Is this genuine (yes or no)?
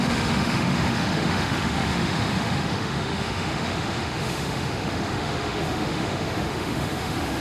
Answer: no